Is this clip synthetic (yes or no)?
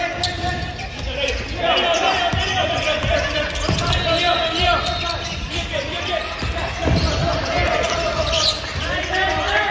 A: no